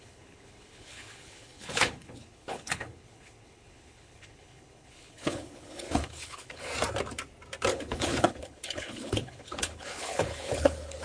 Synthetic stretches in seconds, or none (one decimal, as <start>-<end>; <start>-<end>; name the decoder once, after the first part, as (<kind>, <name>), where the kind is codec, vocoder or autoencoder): 0.0-6.7 (codec, HILCodec); 7.7-11.0